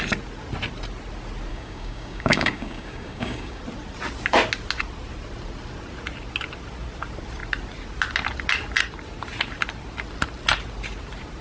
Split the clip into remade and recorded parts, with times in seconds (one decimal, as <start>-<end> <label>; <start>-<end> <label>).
0.0-1.5 recorded; 1.5-3.6 remade; 3.6-11.4 recorded